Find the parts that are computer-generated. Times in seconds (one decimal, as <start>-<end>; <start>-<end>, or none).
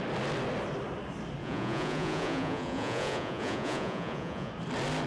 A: 1.4-4.5